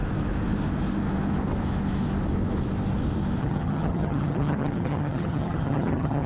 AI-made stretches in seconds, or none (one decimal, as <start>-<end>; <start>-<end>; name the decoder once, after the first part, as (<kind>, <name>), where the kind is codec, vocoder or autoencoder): 3.4-6.3 (vocoder, HiFi-GAN)